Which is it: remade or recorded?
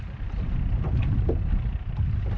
recorded